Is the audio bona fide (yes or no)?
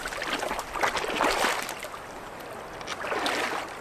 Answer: yes